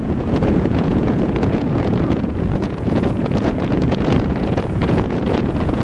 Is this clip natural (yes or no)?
no